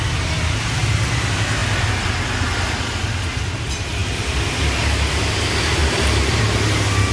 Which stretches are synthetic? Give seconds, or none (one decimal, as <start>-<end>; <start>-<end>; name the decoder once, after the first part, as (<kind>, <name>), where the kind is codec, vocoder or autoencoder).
4.0-4.8 (vocoder, BigVGAN v2)